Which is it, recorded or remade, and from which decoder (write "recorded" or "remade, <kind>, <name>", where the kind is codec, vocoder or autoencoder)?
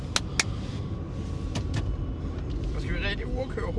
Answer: recorded